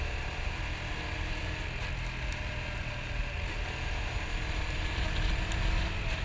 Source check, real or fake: real